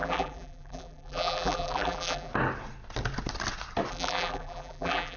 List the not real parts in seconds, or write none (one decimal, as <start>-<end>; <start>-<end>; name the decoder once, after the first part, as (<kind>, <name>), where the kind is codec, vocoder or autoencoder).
0.0-2.3 (vocoder, BigVGAN v2); 3.9-5.2

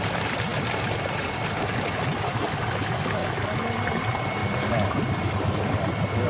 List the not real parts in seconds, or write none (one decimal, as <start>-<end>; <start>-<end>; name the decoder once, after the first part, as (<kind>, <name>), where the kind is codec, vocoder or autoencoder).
0.0-0.5 (vocoder, BigVGAN v2); 2.0-3.2; 3.9-6.3

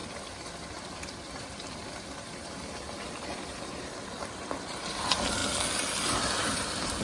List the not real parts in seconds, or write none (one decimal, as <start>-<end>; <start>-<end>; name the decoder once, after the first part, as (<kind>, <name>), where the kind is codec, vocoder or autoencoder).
0.0-5.4 (vocoder, BigVGAN v2); 6.1-7.0

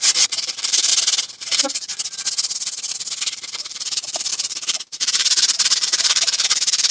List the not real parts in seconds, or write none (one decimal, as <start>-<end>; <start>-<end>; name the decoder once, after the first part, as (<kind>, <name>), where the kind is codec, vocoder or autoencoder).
0.0-0.9 (vocoder, BigVGAN v2); 1.4-1.9; 3.2-6.9